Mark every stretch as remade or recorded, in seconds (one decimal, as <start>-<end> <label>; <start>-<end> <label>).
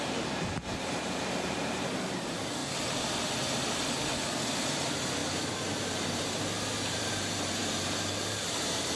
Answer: 0.0-2.6 remade; 2.6-4.4 recorded; 4.4-5.2 remade; 5.2-5.8 recorded; 5.8-9.0 remade